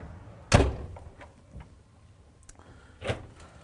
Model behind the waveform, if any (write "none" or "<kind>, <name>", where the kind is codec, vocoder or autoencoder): none